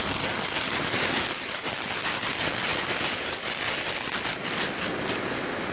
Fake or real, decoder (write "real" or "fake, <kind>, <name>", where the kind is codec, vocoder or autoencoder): real